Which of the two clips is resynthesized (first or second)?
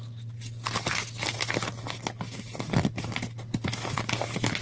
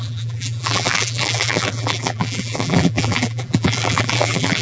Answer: second